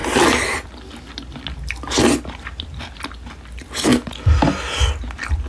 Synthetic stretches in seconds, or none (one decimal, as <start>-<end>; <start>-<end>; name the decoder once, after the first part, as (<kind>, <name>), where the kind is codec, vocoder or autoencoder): none